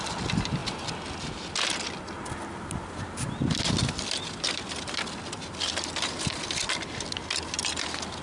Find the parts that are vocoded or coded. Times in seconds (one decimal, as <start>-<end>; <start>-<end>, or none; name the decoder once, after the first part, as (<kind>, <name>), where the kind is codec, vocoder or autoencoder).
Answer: none

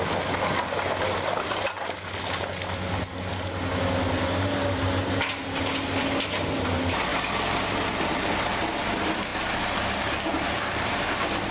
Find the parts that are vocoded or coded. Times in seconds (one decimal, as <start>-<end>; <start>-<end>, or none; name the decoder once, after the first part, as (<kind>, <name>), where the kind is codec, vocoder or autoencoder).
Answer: none

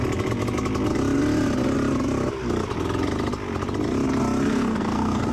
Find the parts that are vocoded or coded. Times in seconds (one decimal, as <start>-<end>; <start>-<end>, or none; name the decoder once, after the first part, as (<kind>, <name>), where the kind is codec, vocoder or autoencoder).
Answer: 4.5-5.3 (codec, SNAC)

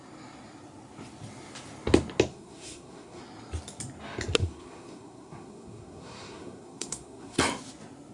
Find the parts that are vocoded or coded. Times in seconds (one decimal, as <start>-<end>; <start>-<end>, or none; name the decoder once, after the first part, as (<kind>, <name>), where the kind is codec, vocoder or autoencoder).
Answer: 2.3-3.2 (codec, SNAC); 4.4-7.4

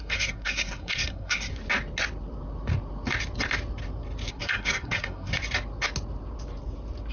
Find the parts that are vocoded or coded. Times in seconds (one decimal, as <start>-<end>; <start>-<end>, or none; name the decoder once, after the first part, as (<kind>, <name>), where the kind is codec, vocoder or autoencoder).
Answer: 0.0-1.5 (codec, SNAC); 4.3-5.3

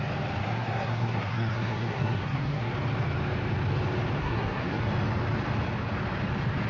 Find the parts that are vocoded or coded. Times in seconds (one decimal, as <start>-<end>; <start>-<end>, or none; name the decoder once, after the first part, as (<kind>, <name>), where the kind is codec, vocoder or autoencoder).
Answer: 0.4-2.7 (codec, SNAC); 4.2-4.8

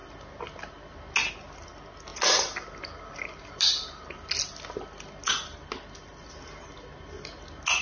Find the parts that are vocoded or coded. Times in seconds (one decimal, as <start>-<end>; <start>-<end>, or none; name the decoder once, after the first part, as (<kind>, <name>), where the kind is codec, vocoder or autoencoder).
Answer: none

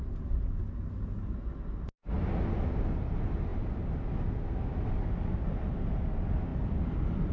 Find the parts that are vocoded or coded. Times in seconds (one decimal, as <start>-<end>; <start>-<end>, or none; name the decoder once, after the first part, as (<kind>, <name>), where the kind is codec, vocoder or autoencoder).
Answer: none